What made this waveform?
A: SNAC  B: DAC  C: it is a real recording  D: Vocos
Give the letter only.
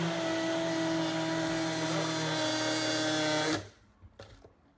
C